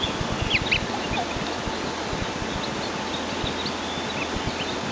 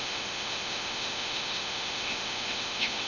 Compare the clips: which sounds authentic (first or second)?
first